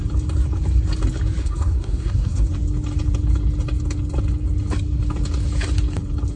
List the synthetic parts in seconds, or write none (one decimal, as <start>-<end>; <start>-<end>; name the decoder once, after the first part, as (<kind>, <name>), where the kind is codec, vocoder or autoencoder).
1.4-2.5 (codec, SNAC)